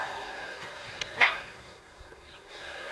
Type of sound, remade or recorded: remade